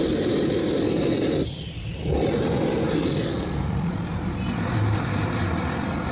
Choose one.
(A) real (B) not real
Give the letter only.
B